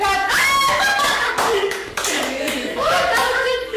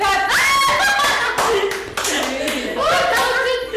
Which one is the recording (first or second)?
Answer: second